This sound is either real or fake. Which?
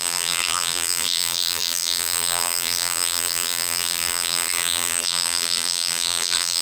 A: fake